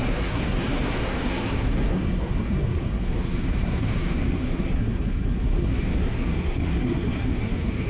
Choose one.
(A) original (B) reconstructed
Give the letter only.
B